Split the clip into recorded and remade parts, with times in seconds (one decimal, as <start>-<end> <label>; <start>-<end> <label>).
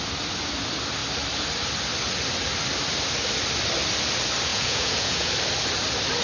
0.0-4.5 recorded; 4.5-5.3 remade; 5.3-6.2 recorded